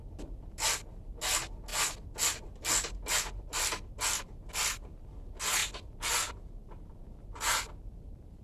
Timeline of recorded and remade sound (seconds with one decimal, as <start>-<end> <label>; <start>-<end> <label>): 0.0-8.4 recorded